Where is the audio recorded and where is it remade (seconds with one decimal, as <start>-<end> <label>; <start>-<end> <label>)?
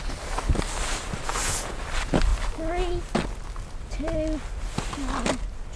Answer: 0.0-1.3 recorded; 1.3-1.8 remade; 1.8-5.8 recorded